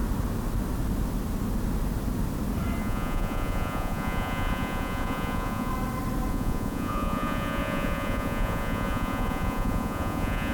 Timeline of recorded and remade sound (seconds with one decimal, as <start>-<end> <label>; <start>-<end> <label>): 0.0-2.8 recorded; 2.8-5.7 remade; 5.7-6.3 recorded; 6.3-10.5 remade